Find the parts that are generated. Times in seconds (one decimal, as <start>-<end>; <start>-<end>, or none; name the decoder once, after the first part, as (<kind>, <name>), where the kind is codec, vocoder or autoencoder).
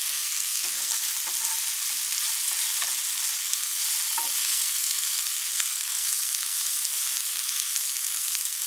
0.0-1.0 (codec, SNAC); 3.4-3.8; 4.4-8.7